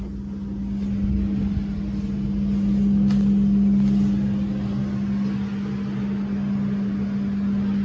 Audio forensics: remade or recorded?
recorded